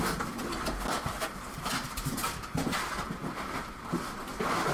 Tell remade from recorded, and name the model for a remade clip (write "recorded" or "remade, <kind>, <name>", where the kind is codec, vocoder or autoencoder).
recorded